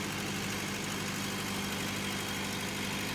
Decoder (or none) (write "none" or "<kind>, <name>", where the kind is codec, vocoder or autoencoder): none